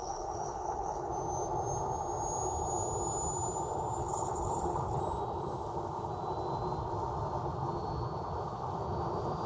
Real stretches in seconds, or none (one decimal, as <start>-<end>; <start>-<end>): 1.1-4.0; 5.0-9.5